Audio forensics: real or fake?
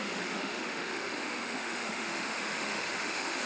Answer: fake